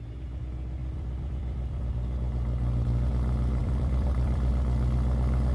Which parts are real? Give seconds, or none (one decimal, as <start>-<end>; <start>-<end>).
0.0-0.8; 1.9-3.6; 4.5-5.5

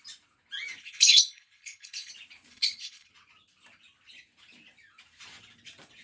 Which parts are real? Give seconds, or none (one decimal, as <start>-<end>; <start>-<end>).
0.0-0.8; 2.1-2.5; 3.1-6.0

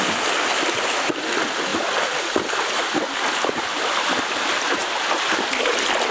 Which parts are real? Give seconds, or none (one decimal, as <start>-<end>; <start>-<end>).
0.0-6.1

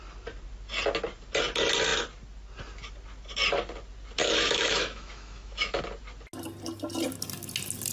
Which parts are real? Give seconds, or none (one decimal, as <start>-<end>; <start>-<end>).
0.0-4.2; 5.8-7.9